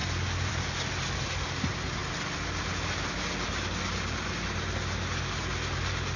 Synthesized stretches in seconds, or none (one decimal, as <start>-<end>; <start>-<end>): none